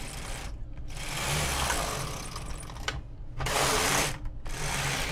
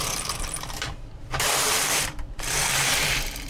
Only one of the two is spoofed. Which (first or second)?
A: second